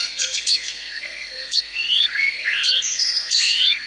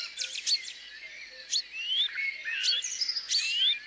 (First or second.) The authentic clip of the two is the second